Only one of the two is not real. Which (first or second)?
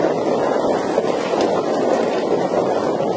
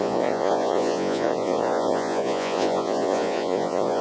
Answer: second